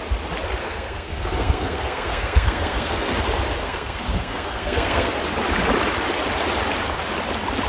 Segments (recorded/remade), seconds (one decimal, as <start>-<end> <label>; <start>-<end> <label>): 0.0-0.6 recorded; 0.6-3.2 remade; 3.2-3.6 recorded; 3.6-5.2 remade; 5.2-7.7 recorded